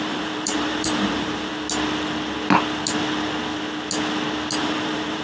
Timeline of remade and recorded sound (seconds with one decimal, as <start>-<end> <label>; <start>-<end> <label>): 0.0-1.5 remade; 1.5-4.6 recorded; 4.6-5.2 remade